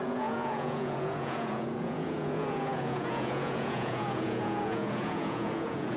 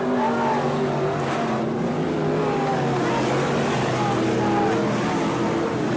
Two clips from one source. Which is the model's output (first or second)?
first